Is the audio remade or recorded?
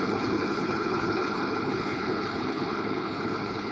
remade